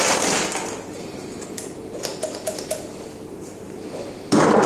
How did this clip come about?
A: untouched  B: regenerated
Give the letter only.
A